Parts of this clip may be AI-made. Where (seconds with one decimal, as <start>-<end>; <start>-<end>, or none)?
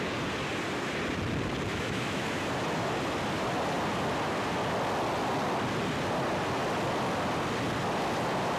1.7-2.4